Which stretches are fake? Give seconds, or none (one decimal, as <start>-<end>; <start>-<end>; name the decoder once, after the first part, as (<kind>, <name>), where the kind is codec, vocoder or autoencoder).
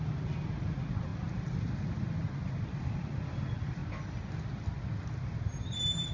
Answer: none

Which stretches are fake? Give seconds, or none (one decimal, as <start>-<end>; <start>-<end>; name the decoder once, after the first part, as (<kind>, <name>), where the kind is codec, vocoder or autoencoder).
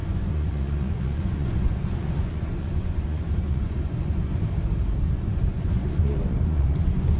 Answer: 0.0-4.3 (vocoder, Vocos); 5.0-7.2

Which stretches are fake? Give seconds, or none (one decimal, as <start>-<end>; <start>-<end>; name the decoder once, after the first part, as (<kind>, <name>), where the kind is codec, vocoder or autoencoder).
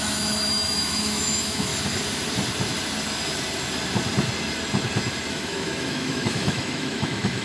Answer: 0.0-1.7 (autoencoder, DAC-VAE); 5.3-7.4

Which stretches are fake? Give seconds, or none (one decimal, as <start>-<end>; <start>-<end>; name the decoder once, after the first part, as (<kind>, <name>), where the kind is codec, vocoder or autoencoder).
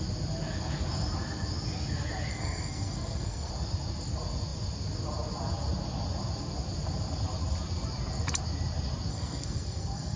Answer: 2.3-3.5 (codec, SNAC); 9.1-10.2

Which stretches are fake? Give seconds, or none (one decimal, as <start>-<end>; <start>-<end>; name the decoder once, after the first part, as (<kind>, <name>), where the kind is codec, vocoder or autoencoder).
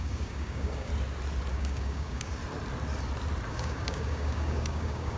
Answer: 0.0-0.9 (codec, DAC); 1.5-2.4; 3.5-5.2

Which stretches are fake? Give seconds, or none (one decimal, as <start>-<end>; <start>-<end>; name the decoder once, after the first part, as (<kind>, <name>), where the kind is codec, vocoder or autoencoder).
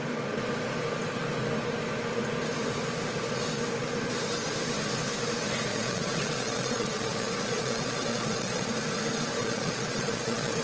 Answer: 5.7-8.7 (vocoder, Vocos); 9.4-10.6